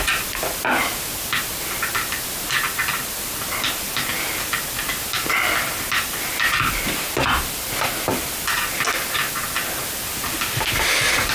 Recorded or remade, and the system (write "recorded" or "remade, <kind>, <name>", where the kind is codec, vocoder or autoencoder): recorded